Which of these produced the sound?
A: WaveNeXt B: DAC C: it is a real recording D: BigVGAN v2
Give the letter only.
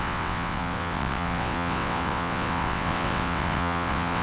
A